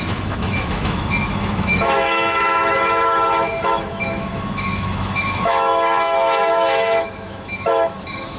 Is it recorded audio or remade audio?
remade